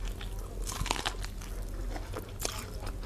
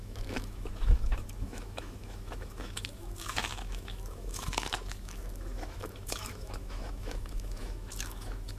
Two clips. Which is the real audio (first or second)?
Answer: first